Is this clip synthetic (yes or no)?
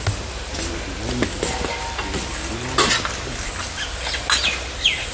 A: no